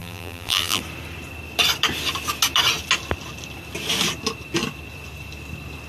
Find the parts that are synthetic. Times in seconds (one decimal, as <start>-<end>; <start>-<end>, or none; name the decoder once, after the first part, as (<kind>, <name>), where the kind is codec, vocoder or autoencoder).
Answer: 0.0-0.8 (vocoder, BigVGAN v2)